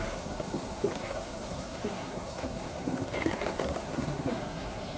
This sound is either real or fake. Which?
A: fake